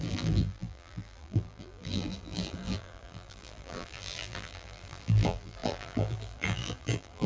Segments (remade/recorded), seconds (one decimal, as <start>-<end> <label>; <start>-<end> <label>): 0.0-7.3 remade